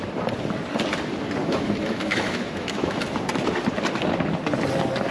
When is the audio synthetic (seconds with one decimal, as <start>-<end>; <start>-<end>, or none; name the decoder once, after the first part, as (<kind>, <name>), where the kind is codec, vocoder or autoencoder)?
1.4-3.0 (autoencoder, DAC-VAE)